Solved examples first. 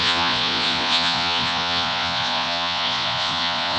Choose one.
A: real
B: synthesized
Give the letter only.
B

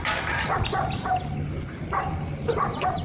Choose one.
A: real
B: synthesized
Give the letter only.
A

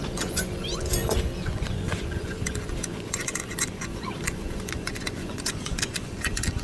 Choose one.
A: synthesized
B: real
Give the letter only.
A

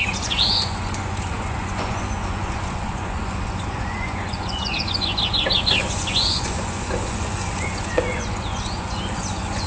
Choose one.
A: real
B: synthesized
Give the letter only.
B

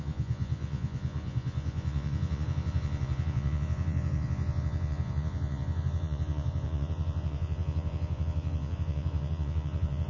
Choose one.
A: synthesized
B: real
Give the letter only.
A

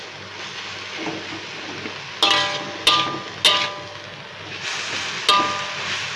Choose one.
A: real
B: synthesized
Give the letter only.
A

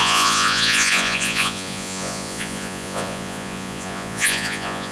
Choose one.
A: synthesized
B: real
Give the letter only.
A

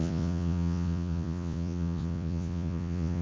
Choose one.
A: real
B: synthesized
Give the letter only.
B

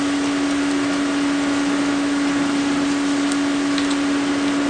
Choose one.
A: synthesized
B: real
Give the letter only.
B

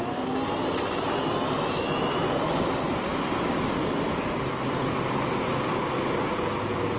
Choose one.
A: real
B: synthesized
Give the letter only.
A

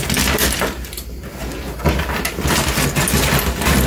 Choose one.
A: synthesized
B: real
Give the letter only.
B